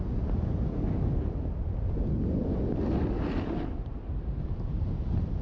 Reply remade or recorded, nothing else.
recorded